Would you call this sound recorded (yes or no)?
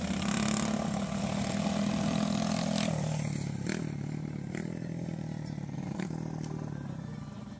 yes